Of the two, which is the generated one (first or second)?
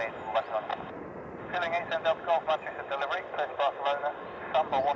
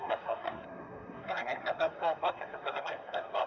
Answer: second